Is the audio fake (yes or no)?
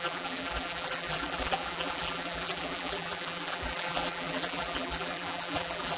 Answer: yes